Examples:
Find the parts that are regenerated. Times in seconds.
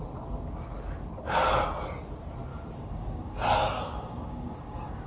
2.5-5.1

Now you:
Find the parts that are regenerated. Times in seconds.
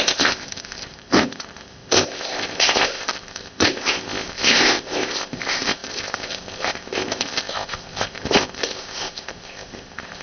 0.0-10.2